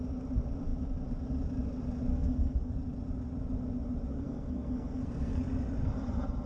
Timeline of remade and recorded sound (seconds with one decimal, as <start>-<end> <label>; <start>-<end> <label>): 0.0-2.1 recorded; 2.1-2.7 remade; 2.7-4.1 recorded; 4.1-5.4 remade; 5.4-6.5 recorded